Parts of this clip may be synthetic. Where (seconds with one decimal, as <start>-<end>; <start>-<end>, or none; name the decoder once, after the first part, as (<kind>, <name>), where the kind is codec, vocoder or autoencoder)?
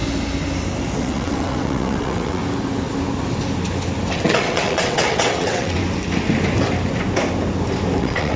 1.0-2.4 (vocoder, WaveNeXt); 4.1-5.8; 8.0-8.4